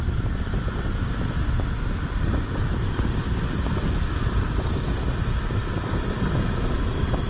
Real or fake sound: real